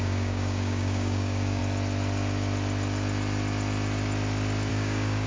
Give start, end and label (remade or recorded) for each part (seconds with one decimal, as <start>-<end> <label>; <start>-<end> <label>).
0.0-1.6 remade; 1.6-4.7 recorded; 4.7-5.3 remade